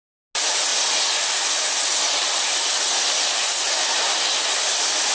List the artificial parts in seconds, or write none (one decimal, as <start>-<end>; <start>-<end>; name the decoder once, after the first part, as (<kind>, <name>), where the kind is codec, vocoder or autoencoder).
none